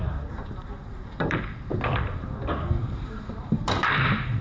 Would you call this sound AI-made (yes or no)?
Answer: yes